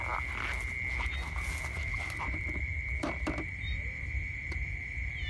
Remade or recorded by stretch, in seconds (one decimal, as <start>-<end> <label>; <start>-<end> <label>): 0.0-1.9 recorded; 1.9-5.3 remade

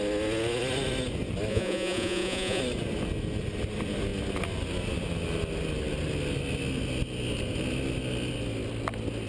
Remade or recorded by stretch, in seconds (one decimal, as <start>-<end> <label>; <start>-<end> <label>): 0.0-1.5 recorded; 1.5-2.6 remade; 2.6-9.3 recorded

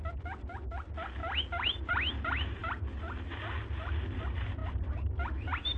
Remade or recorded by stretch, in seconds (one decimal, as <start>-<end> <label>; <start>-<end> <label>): 0.0-5.8 recorded

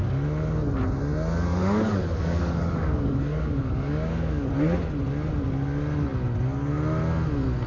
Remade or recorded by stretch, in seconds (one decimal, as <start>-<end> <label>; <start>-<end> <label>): 0.0-1.5 recorded; 1.5-4.5 remade; 4.5-7.7 recorded

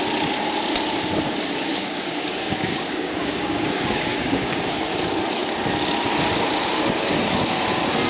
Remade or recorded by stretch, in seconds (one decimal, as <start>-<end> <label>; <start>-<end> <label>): 0.0-1.7 recorded; 1.7-4.6 remade; 4.6-8.1 recorded

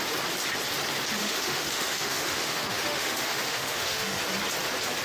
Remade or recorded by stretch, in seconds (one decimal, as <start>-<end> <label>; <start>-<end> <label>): 0.0-1.2 recorded; 1.2-4.2 remade; 4.2-5.0 recorded

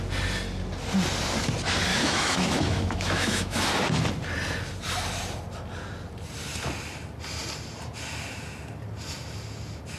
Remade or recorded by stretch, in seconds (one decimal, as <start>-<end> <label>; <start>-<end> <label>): 0.0-1.9 recorded; 1.9-3.7 remade; 3.7-10.0 recorded

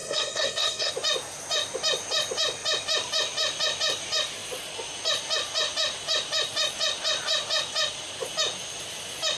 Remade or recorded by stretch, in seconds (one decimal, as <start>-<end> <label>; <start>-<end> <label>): 0.0-0.9 remade; 0.9-9.4 recorded